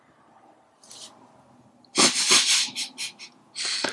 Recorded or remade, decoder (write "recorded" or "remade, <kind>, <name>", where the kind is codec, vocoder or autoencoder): recorded